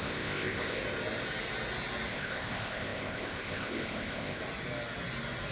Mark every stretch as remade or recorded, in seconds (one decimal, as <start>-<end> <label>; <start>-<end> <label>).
0.0-0.8 remade; 0.8-2.1 recorded; 2.1-4.4 remade; 4.4-5.5 recorded